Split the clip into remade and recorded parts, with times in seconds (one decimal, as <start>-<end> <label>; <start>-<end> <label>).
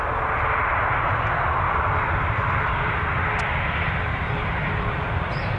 0.0-0.6 remade; 0.6-4.0 recorded; 4.0-5.6 remade